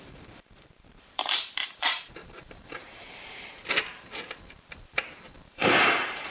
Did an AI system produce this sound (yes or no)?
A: yes